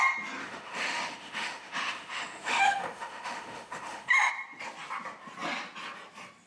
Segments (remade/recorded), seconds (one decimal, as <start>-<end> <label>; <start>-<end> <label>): 0.0-0.4 recorded; 0.4-4.3 remade; 4.3-6.5 recorded

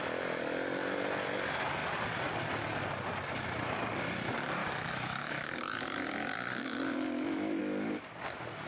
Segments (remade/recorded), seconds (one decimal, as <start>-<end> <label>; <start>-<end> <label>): 0.0-4.6 recorded; 4.6-7.6 remade; 7.6-8.7 recorded

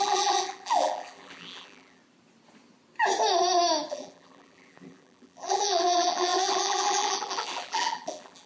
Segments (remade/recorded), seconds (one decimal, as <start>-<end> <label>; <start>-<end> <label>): 0.0-2.0 remade; 2.0-3.9 recorded; 3.9-8.5 remade

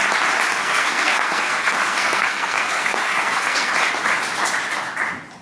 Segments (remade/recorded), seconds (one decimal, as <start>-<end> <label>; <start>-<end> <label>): 0.0-0.5 recorded; 0.5-3.7 remade; 3.7-5.4 recorded

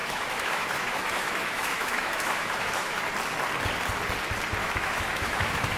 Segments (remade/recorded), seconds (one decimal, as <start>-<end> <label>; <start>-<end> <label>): 0.0-3.0 remade; 3.0-4.6 recorded; 4.6-5.8 remade